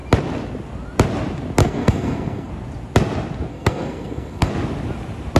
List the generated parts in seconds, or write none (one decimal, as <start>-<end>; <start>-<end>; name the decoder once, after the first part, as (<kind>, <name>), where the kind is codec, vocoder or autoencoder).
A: 1.6-2.5 (codec, SNAC); 3.5-4.5